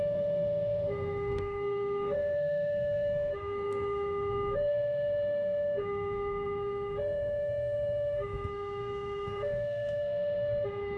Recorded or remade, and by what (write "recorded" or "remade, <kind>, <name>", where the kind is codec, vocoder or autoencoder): remade, codec, SNAC